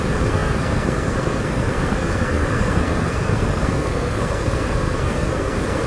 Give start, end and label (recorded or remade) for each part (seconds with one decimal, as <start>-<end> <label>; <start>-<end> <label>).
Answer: 0.0-5.9 remade